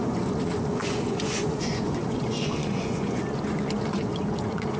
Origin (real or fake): fake